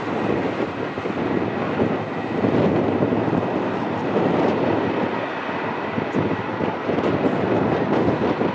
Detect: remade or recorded recorded